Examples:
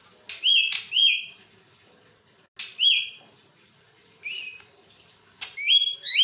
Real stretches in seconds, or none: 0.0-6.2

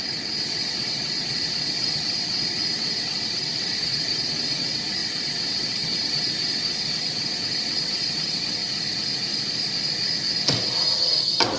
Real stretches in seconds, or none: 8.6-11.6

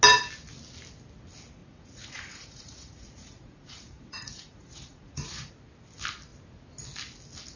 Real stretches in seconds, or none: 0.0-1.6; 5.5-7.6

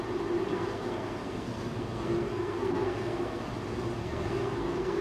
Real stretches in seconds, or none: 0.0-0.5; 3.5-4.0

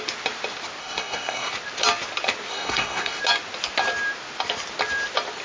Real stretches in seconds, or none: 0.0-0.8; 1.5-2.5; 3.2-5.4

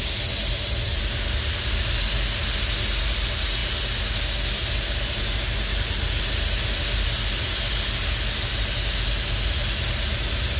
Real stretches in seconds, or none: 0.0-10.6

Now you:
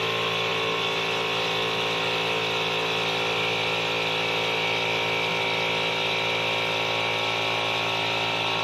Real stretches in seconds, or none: 0.0-8.6